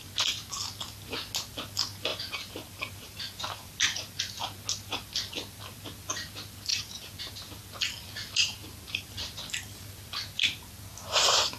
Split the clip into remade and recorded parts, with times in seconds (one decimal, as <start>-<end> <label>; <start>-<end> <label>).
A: 0.0-2.1 recorded; 2.1-4.2 remade; 4.2-6.7 recorded; 6.7-7.3 remade; 7.3-8.6 recorded; 8.6-9.4 remade; 9.4-11.6 recorded